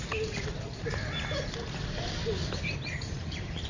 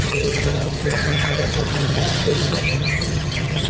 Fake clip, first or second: second